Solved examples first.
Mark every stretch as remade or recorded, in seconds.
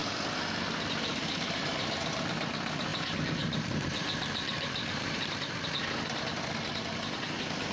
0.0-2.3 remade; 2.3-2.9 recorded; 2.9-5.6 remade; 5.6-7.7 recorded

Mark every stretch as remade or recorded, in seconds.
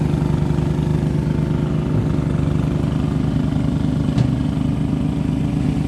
0.0-5.9 recorded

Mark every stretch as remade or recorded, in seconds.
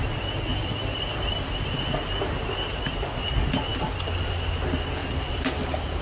0.0-0.5 recorded; 0.5-1.5 remade; 1.5-3.7 recorded; 3.7-4.3 remade; 4.3-5.0 recorded; 5.0-6.0 remade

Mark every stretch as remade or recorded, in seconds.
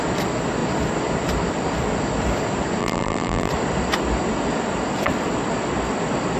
0.0-2.8 recorded; 2.8-3.5 remade; 3.5-6.4 recorded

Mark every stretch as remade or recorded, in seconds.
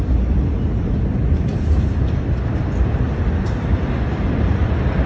0.0-5.1 recorded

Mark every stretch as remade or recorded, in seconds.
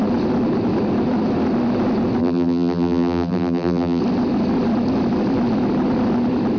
0.0-2.2 recorded; 2.2-4.0 remade; 4.0-6.6 recorded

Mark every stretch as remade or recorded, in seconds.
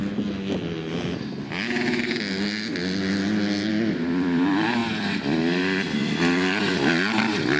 0.0-4.8 recorded; 4.8-5.6 remade; 5.6-7.6 recorded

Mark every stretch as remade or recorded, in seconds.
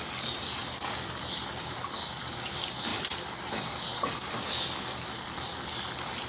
0.0-2.9 recorded; 2.9-4.3 remade; 4.3-6.3 recorded